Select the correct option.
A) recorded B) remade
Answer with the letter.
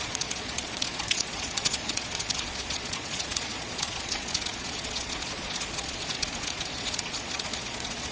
B